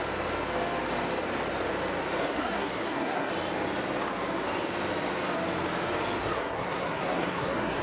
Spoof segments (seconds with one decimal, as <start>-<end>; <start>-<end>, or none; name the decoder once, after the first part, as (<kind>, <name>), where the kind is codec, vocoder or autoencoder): 2.2-3.3 (codec, SNAC); 6.2-7.8